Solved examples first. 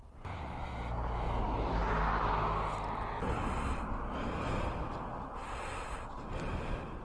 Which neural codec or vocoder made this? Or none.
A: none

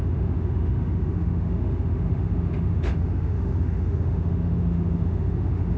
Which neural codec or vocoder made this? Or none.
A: autoencoder, DAC-VAE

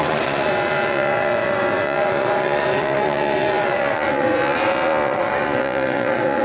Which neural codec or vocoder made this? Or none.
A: vocoder, Vocos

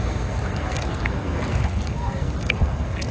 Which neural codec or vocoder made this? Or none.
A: codec, SNAC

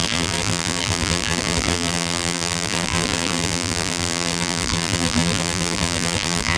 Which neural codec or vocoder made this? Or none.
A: vocoder, BigVGAN v2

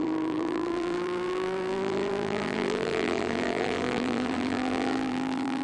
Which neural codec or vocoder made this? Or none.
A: vocoder, BigVGAN v2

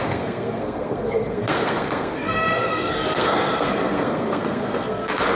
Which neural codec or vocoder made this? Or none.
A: codec, SNAC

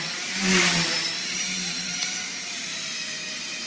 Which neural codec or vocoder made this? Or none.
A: vocoder, BigVGAN v2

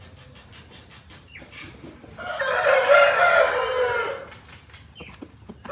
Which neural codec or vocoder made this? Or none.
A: none